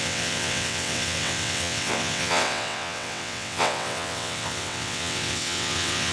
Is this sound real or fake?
fake